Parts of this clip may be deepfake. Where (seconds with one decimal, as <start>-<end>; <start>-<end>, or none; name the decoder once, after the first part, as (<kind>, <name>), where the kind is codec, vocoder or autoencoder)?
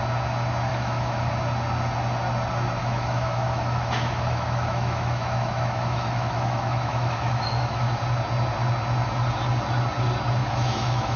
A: 0.7-1.3 (autoencoder, DAC-VAE); 2.8-8.0; 10.4-11.2